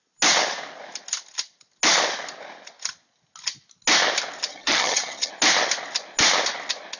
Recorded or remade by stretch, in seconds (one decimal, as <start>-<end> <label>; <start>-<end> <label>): 0.0-4.5 recorded; 4.5-5.3 remade; 5.3-7.0 recorded